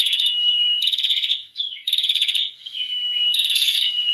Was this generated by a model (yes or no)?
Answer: yes